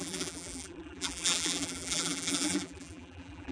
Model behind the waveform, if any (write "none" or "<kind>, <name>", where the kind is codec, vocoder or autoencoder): vocoder, BigVGAN v2